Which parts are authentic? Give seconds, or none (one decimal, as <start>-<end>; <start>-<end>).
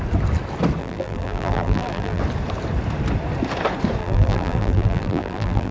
0.0-0.8; 2.2-4.0